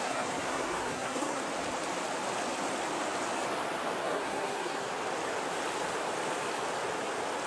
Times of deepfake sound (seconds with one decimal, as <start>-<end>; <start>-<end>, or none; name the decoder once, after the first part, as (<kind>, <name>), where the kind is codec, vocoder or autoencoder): 0.0-1.4 (codec, SNAC); 4.0-4.9